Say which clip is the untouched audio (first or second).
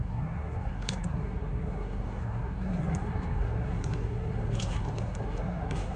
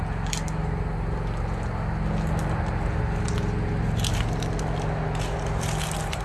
second